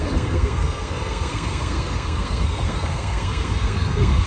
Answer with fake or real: fake